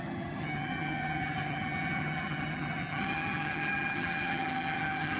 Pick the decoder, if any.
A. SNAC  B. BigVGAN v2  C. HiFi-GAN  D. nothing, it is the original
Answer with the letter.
C